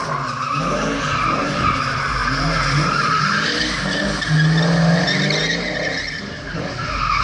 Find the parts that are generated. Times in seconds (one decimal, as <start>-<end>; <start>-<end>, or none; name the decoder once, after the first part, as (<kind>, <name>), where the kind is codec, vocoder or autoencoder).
none